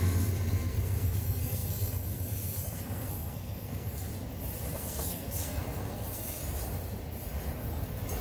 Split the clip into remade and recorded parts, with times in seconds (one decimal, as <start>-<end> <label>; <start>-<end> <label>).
0.0-4.1 remade; 4.1-4.7 recorded; 4.7-6.4 remade; 6.4-8.2 recorded